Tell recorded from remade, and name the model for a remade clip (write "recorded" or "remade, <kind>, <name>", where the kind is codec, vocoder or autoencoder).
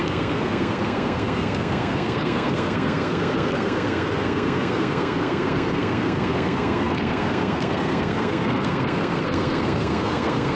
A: remade, codec, SNAC